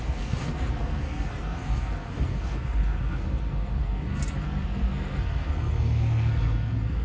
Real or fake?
fake